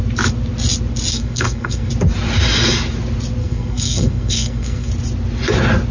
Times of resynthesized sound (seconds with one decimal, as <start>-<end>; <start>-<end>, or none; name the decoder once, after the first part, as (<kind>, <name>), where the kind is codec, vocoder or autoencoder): 1.1-1.9 (codec, SNAC); 3.4-4.9